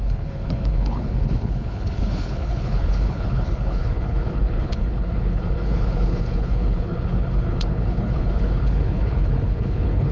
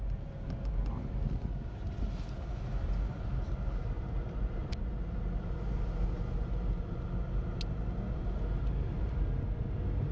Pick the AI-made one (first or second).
first